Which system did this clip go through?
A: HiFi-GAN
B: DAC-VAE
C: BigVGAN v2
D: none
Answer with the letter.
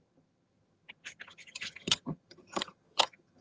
A